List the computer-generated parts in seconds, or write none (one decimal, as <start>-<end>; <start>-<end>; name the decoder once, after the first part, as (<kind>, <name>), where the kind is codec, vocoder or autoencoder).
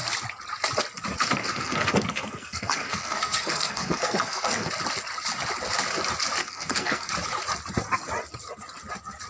1.4-4.7 (codec, SNAC); 6.4-7.1